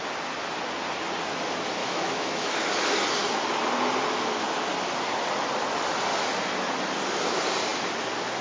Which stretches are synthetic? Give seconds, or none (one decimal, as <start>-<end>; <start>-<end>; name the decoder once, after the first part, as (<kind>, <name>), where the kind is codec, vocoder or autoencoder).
1.8-2.6 (autoencoder, DAC-VAE)